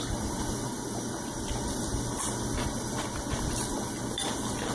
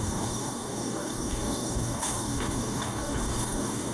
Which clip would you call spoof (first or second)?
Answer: second